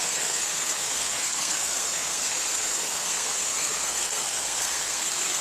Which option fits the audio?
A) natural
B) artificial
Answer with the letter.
B